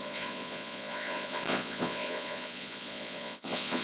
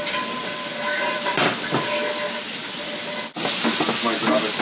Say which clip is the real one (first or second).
second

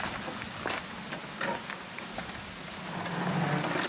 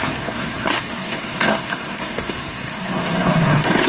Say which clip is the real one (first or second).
first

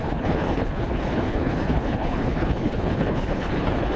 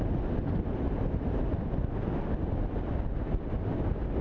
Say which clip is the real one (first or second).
second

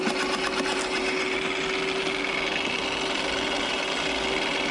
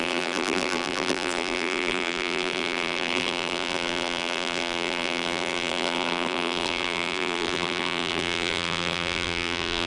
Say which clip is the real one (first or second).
first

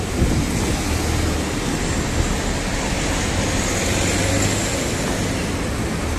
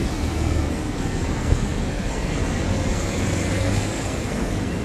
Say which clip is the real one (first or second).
first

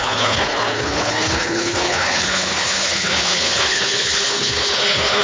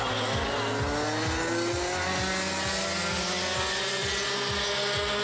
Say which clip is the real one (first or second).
second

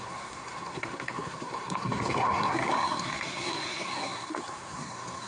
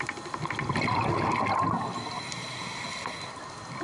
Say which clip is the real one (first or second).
second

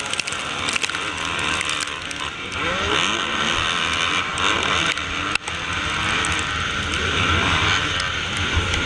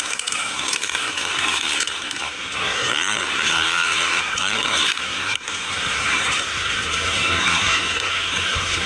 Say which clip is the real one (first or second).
first